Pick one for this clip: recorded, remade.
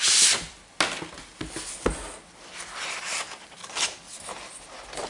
recorded